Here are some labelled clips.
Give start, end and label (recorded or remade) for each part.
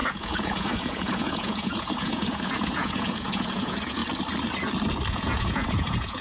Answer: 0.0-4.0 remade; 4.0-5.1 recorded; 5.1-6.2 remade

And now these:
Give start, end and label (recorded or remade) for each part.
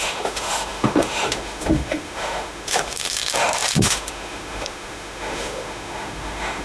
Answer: 0.0-6.6 remade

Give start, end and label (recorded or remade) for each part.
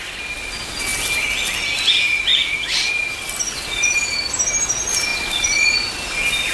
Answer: 0.0-6.5 recorded